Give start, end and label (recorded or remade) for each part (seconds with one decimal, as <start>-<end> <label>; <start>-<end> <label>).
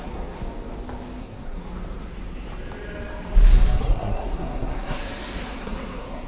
0.0-0.4 remade; 0.4-1.2 recorded; 1.2-1.7 remade; 1.7-3.8 recorded; 3.8-6.3 remade